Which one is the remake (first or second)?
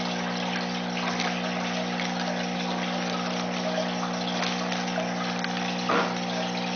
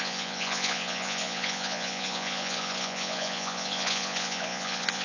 second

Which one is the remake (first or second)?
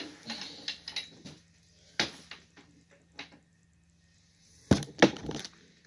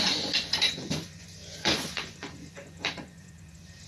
second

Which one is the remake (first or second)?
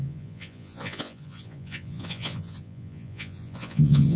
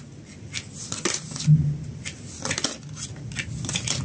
first